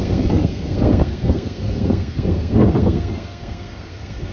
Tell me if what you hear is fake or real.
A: fake